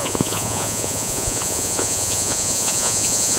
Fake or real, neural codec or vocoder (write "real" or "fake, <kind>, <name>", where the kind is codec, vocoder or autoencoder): fake, vocoder, Vocos